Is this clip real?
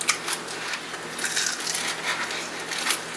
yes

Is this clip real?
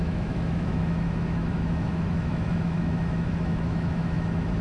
no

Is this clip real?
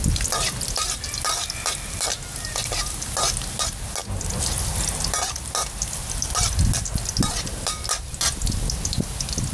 yes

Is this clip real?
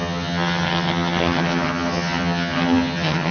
no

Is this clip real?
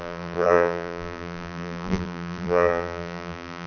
no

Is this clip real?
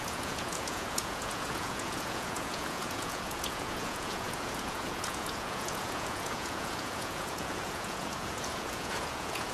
no